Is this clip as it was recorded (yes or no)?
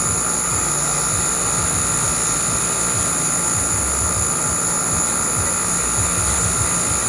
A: yes